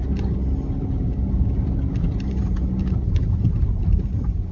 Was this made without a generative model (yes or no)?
yes